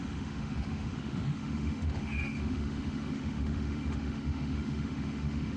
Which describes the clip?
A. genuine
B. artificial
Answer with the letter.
B